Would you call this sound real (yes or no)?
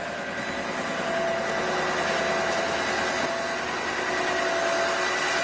yes